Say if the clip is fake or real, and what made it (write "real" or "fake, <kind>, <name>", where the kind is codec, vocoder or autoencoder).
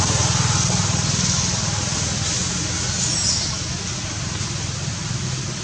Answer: real